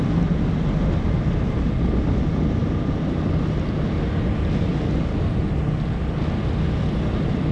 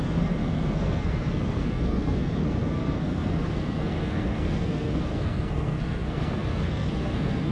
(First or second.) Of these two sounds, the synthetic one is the second